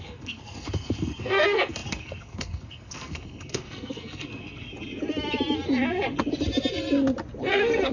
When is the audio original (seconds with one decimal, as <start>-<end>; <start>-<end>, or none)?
4.7-7.5